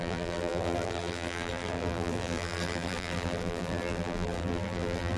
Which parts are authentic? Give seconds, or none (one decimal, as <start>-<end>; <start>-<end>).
none